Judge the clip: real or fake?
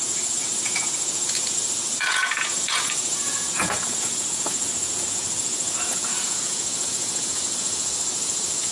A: fake